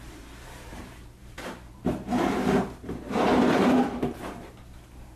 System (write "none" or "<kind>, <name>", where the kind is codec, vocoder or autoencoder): vocoder, BigVGAN v2